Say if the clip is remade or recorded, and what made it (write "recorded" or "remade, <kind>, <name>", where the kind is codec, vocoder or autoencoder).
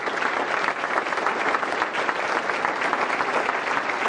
recorded